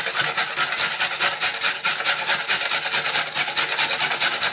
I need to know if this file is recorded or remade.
recorded